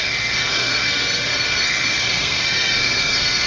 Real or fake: fake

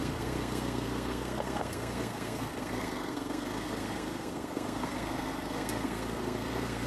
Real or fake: fake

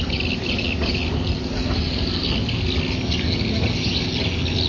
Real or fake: real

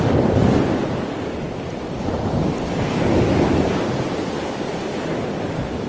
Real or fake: real